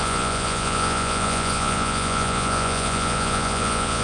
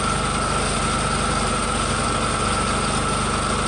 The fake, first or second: first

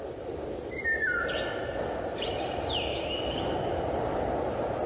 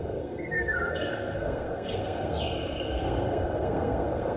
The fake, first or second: second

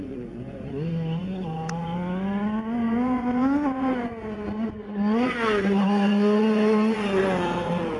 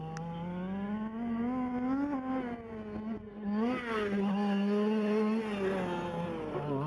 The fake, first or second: first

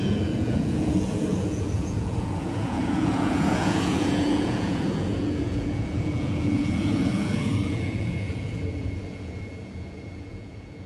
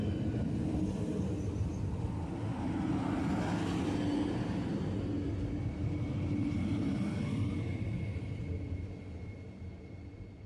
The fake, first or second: first